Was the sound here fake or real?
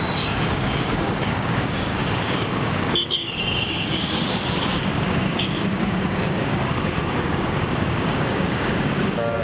fake